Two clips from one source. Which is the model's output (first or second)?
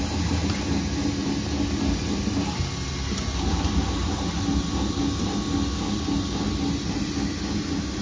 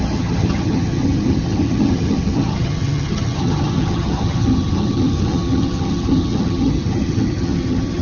second